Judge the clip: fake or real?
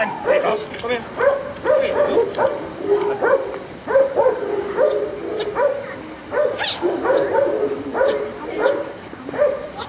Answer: fake